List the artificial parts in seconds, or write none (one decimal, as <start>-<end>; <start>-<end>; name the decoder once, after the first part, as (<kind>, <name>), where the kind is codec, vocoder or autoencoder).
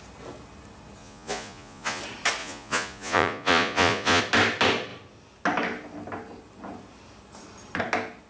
1.0-2.0 (vocoder, Vocos); 2.4-4.2